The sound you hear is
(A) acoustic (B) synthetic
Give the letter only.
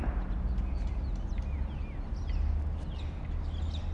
A